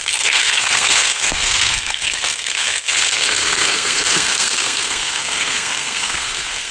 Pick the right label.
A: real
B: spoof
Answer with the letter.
B